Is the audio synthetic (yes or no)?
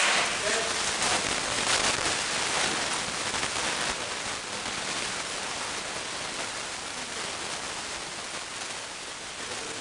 no